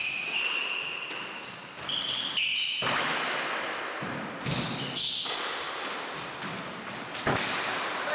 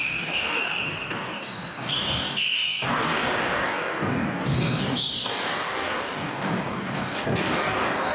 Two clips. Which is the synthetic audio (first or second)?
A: second